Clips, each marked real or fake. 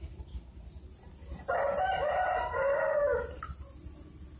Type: real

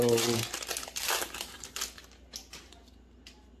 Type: real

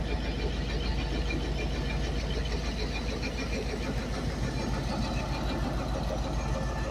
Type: real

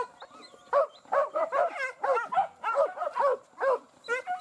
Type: real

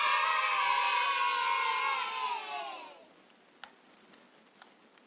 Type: real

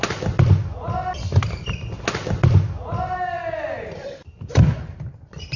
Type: real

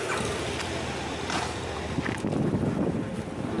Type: real